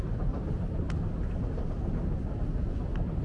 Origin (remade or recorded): recorded